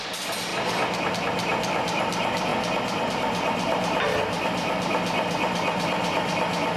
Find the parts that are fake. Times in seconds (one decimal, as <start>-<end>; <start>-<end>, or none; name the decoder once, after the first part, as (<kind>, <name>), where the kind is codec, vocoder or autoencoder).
0.0-0.5 (vocoder, BigVGAN v2); 1.1-2.5; 3.0-6.8